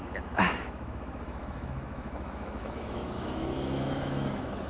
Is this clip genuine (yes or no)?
no